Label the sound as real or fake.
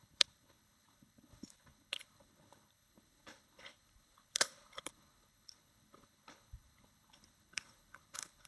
fake